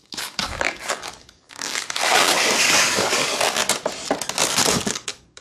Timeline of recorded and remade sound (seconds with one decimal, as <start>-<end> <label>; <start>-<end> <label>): 0.0-3.6 remade; 3.6-4.5 recorded; 4.5-5.4 remade

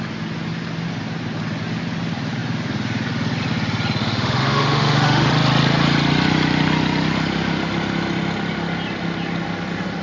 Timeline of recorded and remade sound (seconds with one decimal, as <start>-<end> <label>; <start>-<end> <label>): 0.0-4.0 recorded; 4.0-5.3 remade; 5.3-10.0 recorded

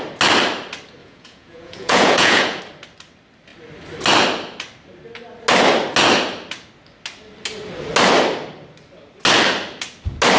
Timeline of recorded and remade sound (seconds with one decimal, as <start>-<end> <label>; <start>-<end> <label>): 0.0-1.0 recorded; 1.0-2.6 remade; 2.6-10.4 recorded

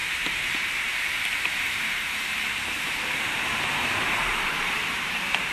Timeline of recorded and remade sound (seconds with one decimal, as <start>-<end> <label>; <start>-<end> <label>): 0.0-5.5 remade

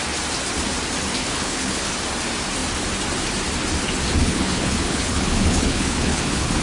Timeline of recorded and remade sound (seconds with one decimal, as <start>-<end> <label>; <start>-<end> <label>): 0.0-1.2 recorded; 1.2-1.9 remade; 1.9-4.2 recorded; 4.2-6.6 remade

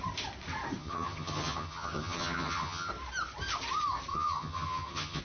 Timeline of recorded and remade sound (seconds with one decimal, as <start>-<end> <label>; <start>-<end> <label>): 0.0-0.8 recorded; 0.8-2.9 remade; 2.9-4.1 recorded; 4.1-5.2 remade